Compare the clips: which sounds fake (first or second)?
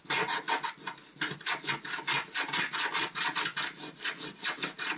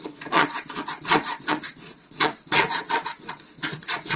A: second